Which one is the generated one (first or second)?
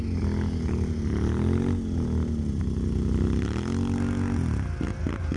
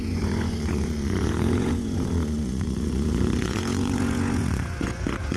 second